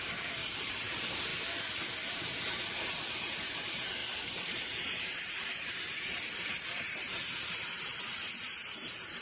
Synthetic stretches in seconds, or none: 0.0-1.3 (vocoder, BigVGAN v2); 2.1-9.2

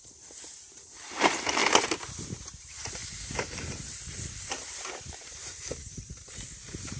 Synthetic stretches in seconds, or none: 0.7-1.6 (vocoder, BigVGAN v2); 2.2-7.0

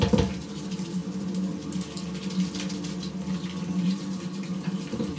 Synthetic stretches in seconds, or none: 0.0-1.0 (vocoder, BigVGAN v2); 3.8-5.2